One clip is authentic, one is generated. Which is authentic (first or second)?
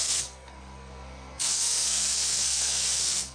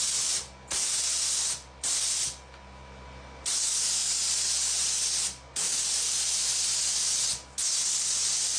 second